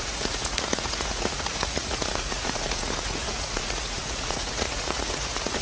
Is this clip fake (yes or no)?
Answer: yes